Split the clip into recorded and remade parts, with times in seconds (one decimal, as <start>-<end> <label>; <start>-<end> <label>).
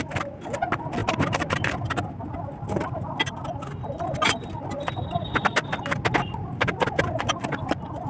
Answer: 0.0-8.1 recorded